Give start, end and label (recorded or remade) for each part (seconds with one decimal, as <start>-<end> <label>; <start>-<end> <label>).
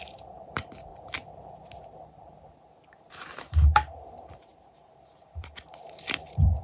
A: 0.0-0.9 remade; 0.9-3.1 recorded; 3.1-6.6 remade